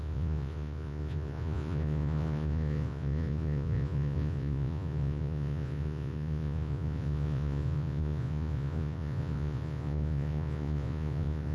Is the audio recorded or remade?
remade